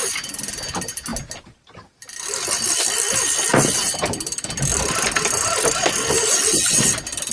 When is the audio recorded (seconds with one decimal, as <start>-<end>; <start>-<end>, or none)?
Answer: 0.0-7.3